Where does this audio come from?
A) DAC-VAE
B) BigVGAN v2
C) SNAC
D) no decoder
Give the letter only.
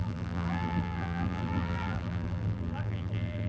B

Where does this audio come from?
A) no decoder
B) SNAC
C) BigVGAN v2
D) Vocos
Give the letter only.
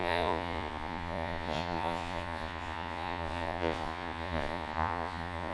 D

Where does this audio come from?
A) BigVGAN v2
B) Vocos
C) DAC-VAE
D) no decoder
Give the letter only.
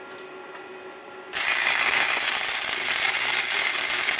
D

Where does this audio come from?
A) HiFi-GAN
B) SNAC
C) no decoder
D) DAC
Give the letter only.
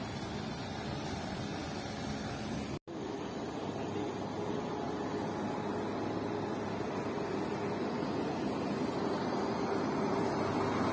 C